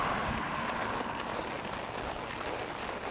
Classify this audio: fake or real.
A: real